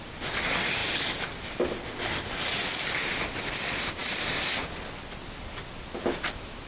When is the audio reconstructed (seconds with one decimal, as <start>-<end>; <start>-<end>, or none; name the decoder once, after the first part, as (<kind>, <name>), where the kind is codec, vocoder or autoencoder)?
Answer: none